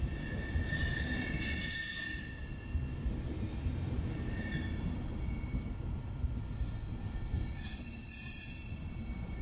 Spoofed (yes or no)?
no